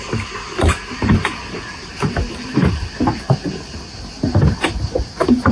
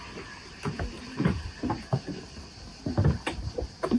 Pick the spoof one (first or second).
second